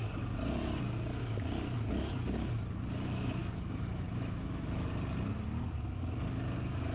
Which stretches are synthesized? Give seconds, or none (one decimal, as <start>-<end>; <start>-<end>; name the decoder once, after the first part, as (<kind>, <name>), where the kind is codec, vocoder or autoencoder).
3.4-4.9 (autoencoder, DAC-VAE)